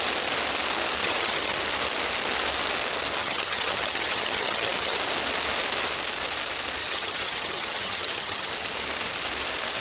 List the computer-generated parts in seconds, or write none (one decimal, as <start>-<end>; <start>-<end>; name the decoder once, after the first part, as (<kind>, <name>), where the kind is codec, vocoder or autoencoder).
1.0-1.6 (vocoder, HiFi-GAN); 3.2-5.0; 6.8-8.5